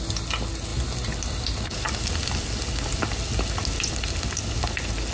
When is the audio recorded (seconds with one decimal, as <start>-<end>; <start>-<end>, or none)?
0.0-5.1

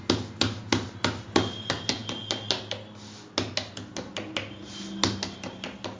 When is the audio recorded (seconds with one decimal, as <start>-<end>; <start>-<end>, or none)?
0.0-6.0